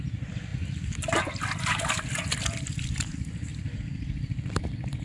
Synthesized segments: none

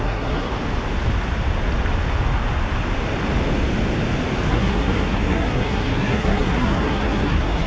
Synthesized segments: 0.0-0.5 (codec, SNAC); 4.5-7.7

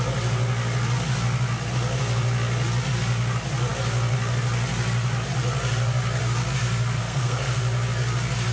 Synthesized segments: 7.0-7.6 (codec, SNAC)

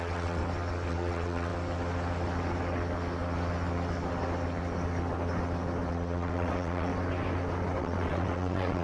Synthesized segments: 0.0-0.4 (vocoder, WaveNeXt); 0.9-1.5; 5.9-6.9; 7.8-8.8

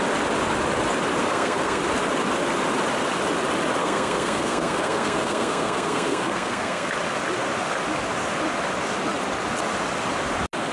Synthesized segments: 1.2-1.8 (codec, SNAC); 3.8-6.9

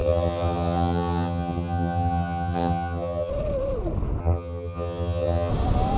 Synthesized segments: 0.0-3.3 (vocoder, HiFi-GAN); 4.2-5.5

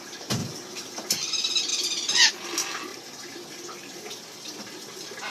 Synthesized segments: none

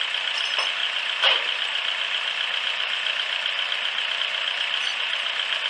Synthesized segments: none